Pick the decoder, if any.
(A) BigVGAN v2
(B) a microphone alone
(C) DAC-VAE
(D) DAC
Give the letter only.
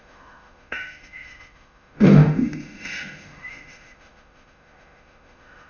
C